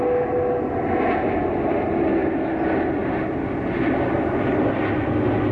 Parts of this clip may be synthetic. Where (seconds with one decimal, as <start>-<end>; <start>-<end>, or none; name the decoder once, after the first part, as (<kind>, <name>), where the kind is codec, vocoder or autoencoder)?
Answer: none